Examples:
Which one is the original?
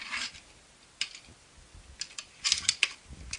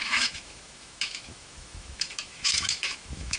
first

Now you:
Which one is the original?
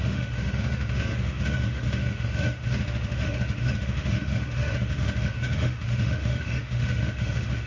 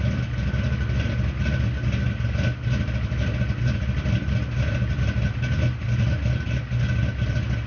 second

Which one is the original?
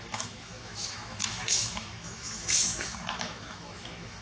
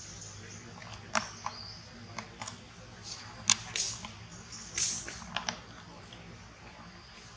second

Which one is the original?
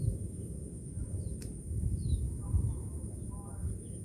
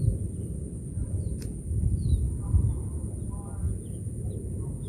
second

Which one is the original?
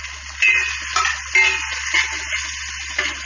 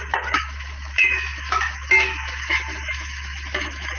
first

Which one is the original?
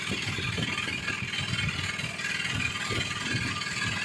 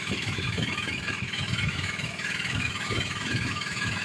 first